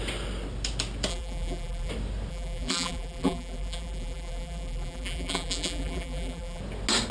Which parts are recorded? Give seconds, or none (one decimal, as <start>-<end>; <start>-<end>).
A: 0.0-1.1; 1.9-2.3; 6.6-7.1